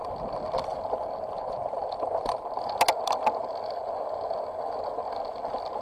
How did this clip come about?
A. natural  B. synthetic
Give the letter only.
A